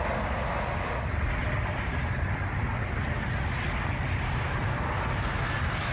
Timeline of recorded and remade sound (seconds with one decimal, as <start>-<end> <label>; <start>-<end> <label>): 0.0-5.9 recorded